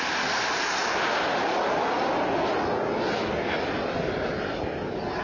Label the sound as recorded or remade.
recorded